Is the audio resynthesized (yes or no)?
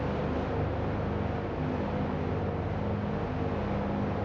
no